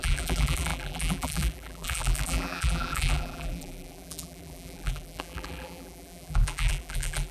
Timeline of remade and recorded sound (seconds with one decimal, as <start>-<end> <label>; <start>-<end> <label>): 0.0-7.3 remade